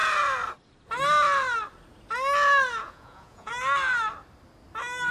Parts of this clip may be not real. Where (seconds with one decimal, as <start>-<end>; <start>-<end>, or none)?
2.8-3.5